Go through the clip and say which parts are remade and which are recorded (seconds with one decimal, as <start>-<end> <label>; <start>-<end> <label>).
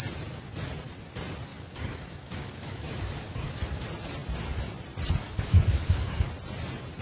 0.0-1.5 recorded; 1.5-3.8 remade; 3.8-5.2 recorded; 5.2-6.3 remade; 6.3-7.0 recorded